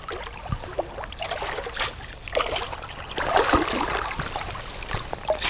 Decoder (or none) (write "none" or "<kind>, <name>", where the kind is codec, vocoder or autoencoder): none